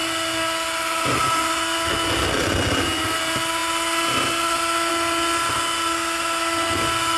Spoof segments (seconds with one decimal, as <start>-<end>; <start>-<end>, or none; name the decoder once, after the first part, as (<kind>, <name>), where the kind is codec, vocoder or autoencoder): none